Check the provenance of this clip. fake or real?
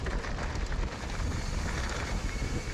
real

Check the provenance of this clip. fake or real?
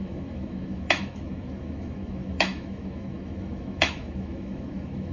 fake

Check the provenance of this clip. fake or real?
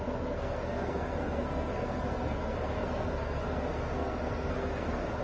fake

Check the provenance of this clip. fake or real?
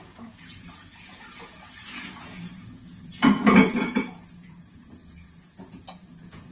fake